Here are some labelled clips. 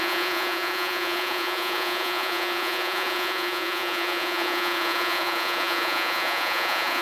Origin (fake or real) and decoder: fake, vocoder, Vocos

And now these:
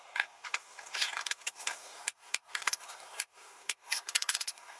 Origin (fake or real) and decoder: fake, codec, SNAC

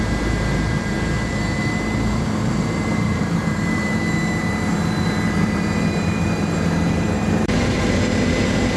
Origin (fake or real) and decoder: fake, vocoder, BigVGAN v2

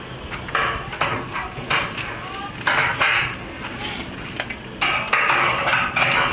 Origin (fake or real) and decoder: real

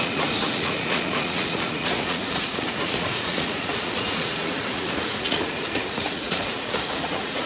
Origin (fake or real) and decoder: fake, vocoder, Vocos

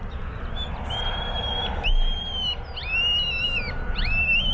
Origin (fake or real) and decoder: real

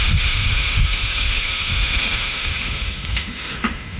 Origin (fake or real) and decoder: fake, autoencoder, DAC-VAE